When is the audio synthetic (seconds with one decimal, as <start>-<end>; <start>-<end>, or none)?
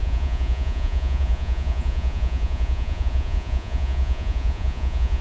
0.0-5.2